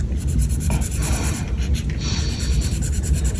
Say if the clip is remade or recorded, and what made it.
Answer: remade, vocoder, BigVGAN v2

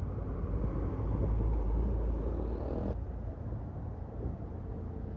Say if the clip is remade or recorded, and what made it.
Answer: recorded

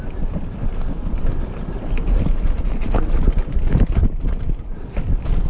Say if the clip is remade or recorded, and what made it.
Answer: recorded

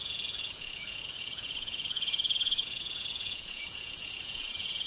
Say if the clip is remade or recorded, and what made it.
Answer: remade, vocoder, Vocos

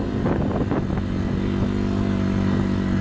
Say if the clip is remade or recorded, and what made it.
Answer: recorded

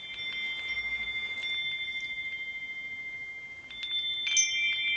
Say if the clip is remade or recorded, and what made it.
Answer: recorded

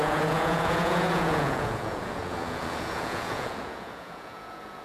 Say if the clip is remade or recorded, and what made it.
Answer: remade, vocoder, Vocos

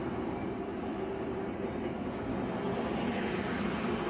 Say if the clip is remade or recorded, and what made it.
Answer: recorded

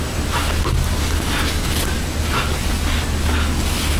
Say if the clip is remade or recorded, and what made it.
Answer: recorded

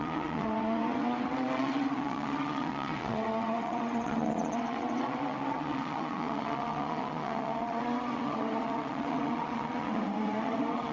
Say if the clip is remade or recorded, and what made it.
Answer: remade, vocoder, WaveNeXt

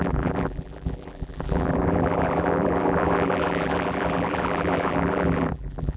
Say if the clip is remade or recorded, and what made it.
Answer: remade, vocoder, BigVGAN v2